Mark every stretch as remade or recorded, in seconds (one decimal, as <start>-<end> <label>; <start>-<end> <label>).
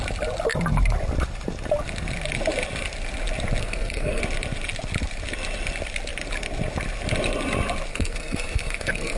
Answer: 0.0-3.6 recorded; 3.6-4.2 remade; 4.2-7.9 recorded; 7.9-9.2 remade